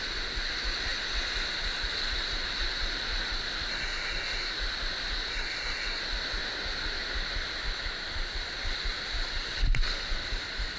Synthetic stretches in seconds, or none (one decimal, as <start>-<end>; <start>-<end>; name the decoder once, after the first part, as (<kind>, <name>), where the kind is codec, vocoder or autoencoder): 3.7-4.5 (codec, SNAC); 5.3-6.0